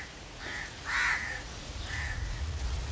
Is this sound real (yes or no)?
no